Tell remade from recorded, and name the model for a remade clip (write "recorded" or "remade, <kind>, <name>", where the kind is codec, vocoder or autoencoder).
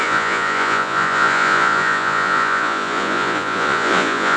remade, vocoder, Vocos